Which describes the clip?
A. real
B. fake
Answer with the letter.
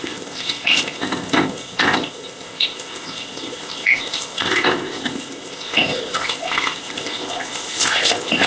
B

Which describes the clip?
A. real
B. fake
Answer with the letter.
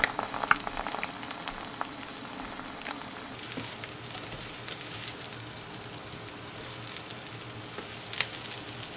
A